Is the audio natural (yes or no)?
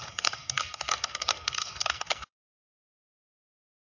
no